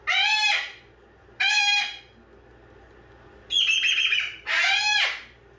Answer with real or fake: real